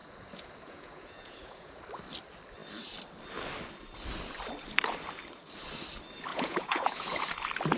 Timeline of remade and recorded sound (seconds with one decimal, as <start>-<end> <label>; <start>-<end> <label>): 0.0-1.8 remade; 1.8-6.3 recorded; 6.3-7.2 remade; 7.2-7.8 recorded